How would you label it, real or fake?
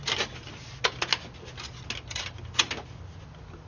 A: real